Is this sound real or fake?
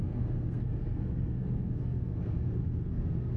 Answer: fake